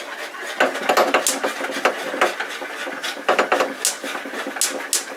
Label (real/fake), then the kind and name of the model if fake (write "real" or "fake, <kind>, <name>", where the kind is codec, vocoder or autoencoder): real